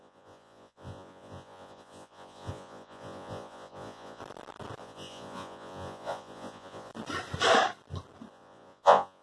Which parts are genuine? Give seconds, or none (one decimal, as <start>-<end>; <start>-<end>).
4.2-4.8; 6.9-8.3